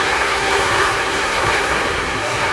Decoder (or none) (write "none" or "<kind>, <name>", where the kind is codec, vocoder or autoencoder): codec, SNAC